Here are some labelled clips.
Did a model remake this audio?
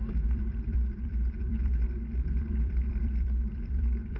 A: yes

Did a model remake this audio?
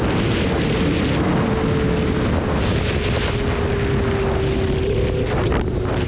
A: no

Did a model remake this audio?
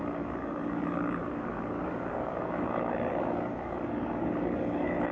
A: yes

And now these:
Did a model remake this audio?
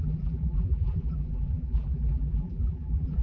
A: yes